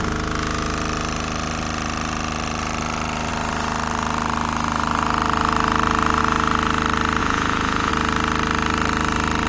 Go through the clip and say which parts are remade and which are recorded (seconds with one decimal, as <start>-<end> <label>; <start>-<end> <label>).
0.0-7.2 recorded; 7.2-7.9 remade; 7.9-9.5 recorded